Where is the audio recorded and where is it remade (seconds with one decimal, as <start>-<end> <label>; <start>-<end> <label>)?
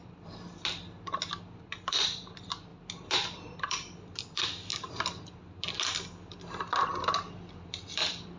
0.0-0.8 remade; 0.8-1.8 recorded; 1.8-2.7 remade; 2.7-3.6 recorded; 3.6-4.7 remade; 4.7-7.7 recorded; 7.7-8.4 remade